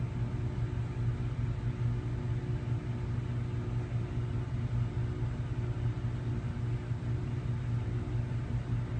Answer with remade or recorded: recorded